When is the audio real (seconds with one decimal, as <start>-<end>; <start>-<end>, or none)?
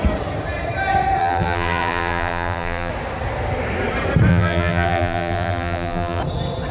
0.0-1.2; 2.9-4.3; 6.2-6.7